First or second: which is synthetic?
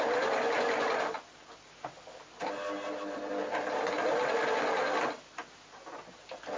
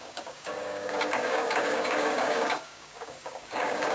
second